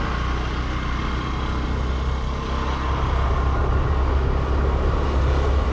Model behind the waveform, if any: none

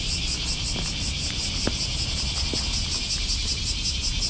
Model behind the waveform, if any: none